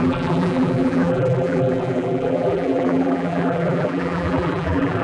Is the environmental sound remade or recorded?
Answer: remade